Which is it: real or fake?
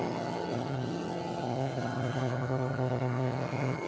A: fake